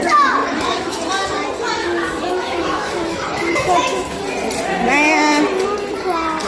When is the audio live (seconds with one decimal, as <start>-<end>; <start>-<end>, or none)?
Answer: 0.0-0.4; 1.0-1.8; 4.2-6.5

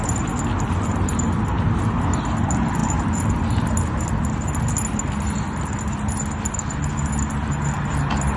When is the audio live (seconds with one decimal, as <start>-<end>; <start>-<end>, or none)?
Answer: 0.0-8.4

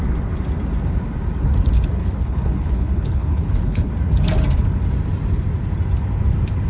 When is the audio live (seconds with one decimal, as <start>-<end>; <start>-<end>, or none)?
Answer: 0.0-2.0; 3.9-6.7

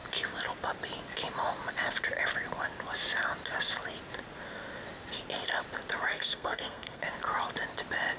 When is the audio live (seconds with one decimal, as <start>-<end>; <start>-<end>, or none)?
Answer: 0.0-6.1; 7.0-8.2